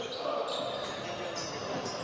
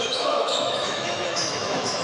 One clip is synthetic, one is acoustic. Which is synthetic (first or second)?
second